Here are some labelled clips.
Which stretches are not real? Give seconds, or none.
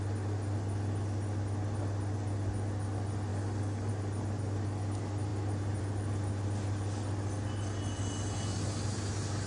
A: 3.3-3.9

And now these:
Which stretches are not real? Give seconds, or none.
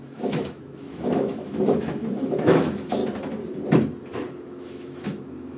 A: 0.0-3.0; 4.3-5.6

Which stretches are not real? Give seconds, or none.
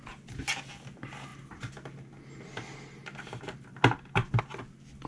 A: none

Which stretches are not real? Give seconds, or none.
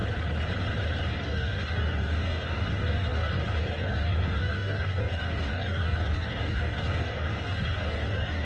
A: 1.1-8.4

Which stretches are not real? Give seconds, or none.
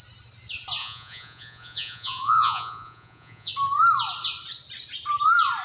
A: 0.8-3.5